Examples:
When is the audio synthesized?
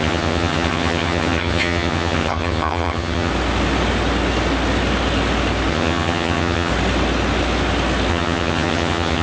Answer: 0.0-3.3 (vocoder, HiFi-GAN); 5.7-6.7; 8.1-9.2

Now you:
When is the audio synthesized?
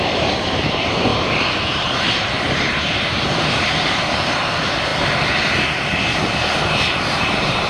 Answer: 0.0-4.9 (vocoder, BigVGAN v2); 7.0-7.7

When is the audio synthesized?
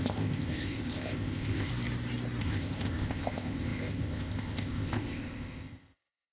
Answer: 0.0-1.7 (codec, ZipCodec); 2.4-6.3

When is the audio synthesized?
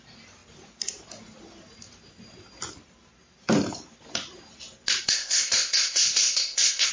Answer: 5.1-6.9 (codec, ZipCodec)